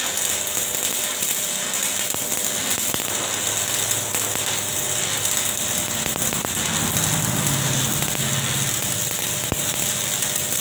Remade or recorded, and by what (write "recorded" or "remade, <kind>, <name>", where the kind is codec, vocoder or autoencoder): recorded